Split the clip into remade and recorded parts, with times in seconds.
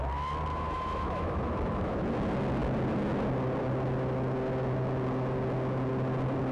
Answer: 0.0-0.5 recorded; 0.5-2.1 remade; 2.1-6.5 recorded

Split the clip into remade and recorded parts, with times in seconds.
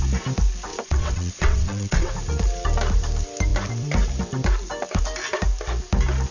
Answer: 0.0-0.7 recorded; 0.7-2.1 remade; 2.1-6.3 recorded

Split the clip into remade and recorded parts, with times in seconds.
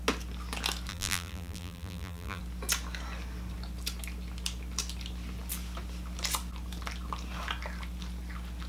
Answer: 0.0-0.9 recorded; 0.9-2.4 remade; 2.4-8.7 recorded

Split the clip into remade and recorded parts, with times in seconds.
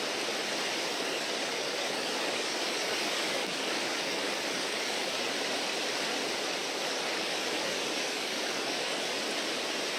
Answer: 0.0-0.9 recorded; 0.9-5.3 remade; 5.3-6.6 recorded; 6.6-9.2 remade; 9.2-10.0 recorded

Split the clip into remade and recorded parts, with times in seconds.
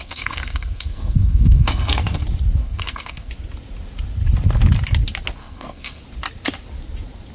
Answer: 0.0-2.2 remade; 2.2-2.6 recorded; 2.6-3.3 remade; 3.3-5.4 recorded; 5.4-6.0 remade; 6.0-7.3 recorded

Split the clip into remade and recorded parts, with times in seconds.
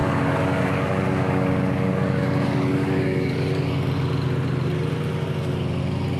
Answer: 0.0-3.7 remade; 3.7-6.2 recorded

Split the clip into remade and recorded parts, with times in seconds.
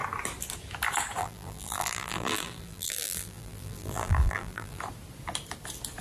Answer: 0.0-1.2 recorded; 1.2-4.8 remade; 4.8-6.0 recorded